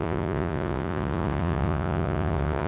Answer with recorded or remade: remade